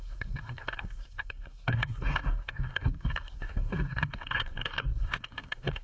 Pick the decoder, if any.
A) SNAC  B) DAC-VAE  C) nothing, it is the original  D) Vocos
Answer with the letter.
A